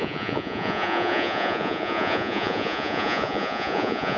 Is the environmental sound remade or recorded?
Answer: remade